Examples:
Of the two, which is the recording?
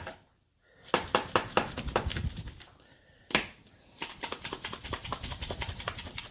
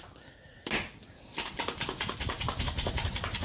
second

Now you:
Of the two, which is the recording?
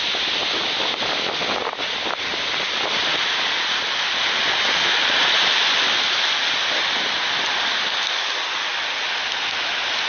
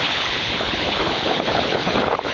first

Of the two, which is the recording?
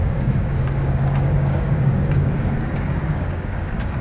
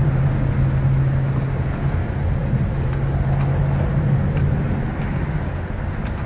second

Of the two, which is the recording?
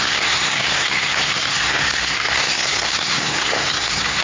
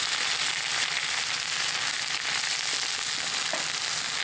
second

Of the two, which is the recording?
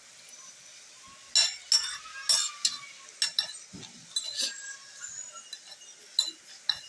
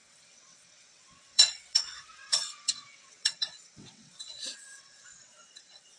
first